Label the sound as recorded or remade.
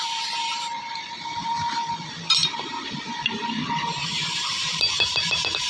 remade